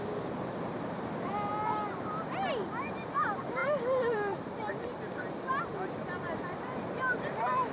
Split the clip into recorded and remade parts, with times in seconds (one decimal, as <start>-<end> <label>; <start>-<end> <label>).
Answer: 0.0-1.5 remade; 1.5-3.0 recorded; 3.0-7.7 remade